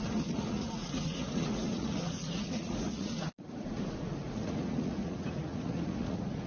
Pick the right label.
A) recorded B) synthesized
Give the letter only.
B